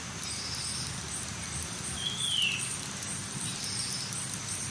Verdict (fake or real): real